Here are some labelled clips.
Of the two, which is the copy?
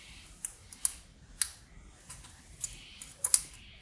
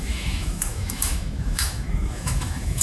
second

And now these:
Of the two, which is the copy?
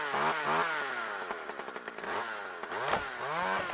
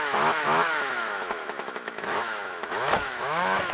second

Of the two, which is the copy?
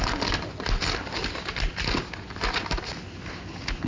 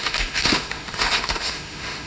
second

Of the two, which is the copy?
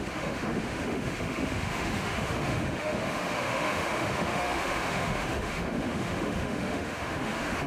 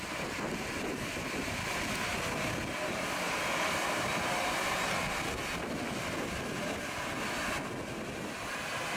first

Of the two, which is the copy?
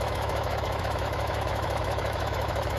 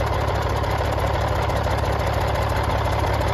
first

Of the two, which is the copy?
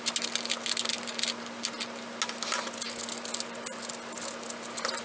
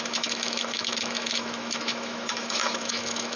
second